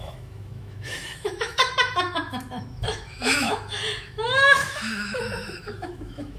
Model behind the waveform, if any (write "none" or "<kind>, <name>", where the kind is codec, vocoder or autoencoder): autoencoder, DAC-VAE